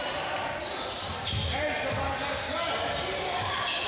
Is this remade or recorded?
recorded